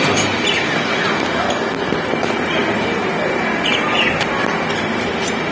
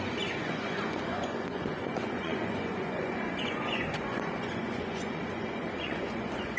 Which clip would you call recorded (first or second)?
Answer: first